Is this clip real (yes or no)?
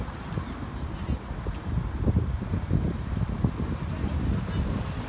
yes